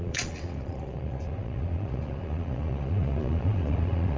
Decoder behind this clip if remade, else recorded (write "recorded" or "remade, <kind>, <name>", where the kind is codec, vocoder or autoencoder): remade, vocoder, Vocos